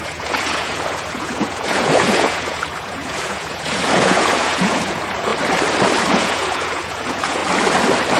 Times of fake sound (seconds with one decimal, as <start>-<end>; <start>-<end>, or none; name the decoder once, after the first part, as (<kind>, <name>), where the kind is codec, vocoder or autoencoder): 0.0-5.3 (vocoder, Vocos); 6.1-7.4